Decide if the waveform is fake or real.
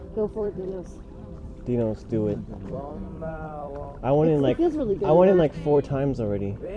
fake